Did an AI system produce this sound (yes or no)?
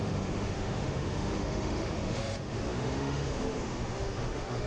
yes